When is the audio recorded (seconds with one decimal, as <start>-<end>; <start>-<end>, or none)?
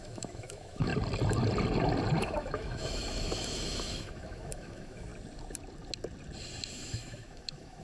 0.9-2.2; 5.1-6.7